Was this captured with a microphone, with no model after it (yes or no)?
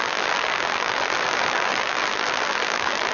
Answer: no